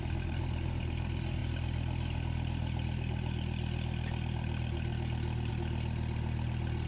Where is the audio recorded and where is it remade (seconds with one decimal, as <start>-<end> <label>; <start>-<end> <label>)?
0.0-6.9 recorded